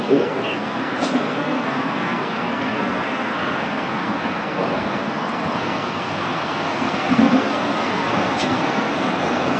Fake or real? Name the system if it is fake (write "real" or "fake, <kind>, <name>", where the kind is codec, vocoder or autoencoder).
fake, codec, SNAC